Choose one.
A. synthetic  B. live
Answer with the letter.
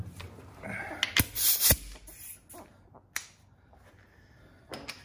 B